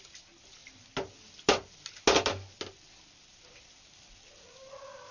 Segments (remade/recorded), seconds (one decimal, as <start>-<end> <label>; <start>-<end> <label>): 0.0-5.1 recorded